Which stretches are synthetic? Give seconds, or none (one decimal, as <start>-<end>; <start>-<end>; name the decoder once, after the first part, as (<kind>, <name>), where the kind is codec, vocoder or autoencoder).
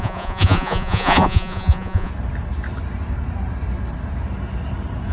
0.0-2.1 (vocoder, Vocos)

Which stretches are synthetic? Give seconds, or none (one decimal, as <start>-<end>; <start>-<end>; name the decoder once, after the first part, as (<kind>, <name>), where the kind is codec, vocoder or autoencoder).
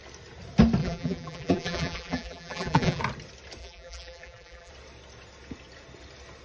0.8-3.0 (vocoder, BigVGAN v2); 3.6-4.7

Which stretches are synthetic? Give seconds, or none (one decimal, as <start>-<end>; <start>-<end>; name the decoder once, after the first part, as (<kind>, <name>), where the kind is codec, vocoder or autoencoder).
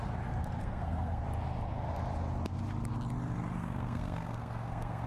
0.6-1.2 (codec, SNAC); 3.5-5.1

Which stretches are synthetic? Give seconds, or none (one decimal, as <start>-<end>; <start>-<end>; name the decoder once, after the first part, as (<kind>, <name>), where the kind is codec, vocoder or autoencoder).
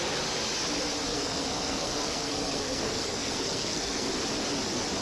1.1-4.1 (codec, SNAC)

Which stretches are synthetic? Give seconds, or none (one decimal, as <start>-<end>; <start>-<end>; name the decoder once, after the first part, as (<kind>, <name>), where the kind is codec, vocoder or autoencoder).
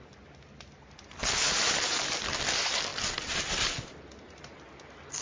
none